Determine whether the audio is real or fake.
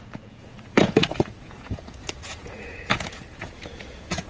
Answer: fake